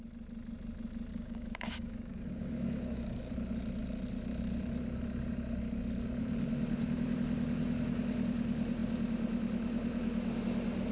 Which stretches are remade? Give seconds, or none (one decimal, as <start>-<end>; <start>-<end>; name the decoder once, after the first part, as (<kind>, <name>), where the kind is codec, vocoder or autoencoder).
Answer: 1.1-3.3 (codec, DAC)